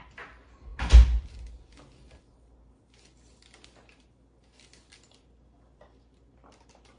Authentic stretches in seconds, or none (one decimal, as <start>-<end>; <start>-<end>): 0.0-7.0